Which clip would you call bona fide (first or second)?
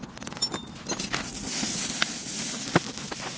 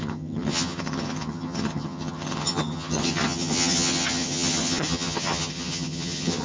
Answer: first